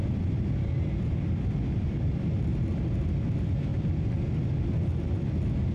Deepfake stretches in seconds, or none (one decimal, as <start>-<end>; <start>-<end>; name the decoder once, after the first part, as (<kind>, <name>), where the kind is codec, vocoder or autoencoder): none